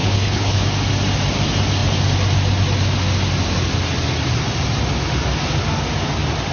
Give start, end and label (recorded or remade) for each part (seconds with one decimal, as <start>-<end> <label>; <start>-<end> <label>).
0.0-0.6 remade; 0.6-6.5 recorded